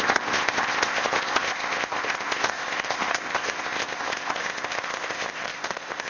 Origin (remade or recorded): remade